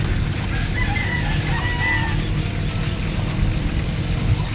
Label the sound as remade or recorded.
recorded